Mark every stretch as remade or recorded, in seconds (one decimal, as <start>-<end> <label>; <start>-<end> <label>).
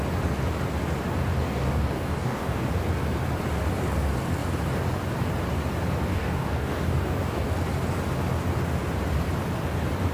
0.0-1.4 recorded; 1.4-2.7 remade; 2.7-6.1 recorded; 6.1-7.5 remade; 7.5-10.1 recorded